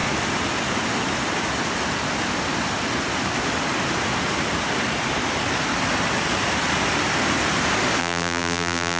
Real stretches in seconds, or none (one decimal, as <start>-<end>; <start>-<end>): 0.0-8.0